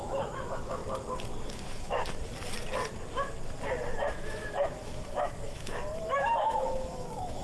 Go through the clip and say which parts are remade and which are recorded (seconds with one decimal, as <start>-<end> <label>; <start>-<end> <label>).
0.0-0.8 remade; 0.8-1.5 recorded; 1.5-2.0 remade; 2.0-4.1 recorded; 4.1-7.4 remade